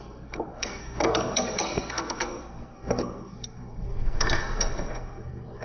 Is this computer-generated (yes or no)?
yes